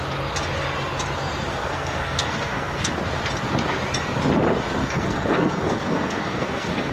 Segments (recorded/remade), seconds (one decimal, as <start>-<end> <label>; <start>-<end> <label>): 0.0-1.5 recorded; 1.5-2.9 remade; 2.9-4.8 recorded; 4.8-6.9 remade

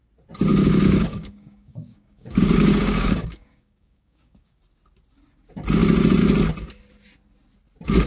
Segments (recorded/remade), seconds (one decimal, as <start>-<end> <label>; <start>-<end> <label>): 0.0-0.5 recorded; 0.5-4.6 remade; 4.6-8.1 recorded

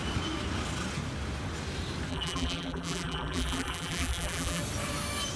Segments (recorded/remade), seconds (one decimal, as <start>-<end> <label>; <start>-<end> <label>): 0.0-2.1 recorded; 2.1-4.6 remade; 4.6-5.4 recorded

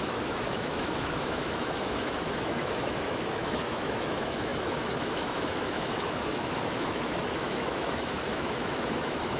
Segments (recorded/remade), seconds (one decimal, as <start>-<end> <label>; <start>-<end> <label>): 0.0-9.4 remade